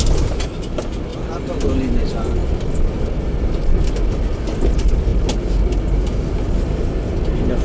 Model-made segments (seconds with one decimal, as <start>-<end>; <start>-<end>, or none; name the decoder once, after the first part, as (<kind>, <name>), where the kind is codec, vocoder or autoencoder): 0.0-1.1 (vocoder, BigVGAN v2); 2.0-2.4; 3.2-5.1; 6.2-7.6